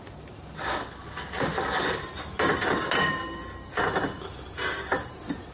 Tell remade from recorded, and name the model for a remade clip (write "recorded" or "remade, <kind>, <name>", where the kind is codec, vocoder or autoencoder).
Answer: recorded